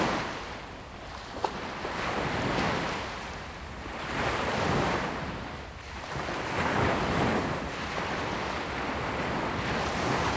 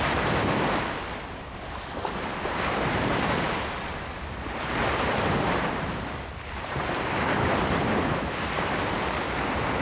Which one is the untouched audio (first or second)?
first